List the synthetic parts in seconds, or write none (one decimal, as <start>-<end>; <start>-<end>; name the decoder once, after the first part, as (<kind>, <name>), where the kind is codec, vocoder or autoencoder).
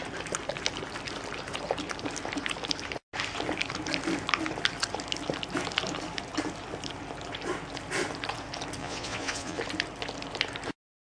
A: 8.8-9.6 (vocoder, Vocos)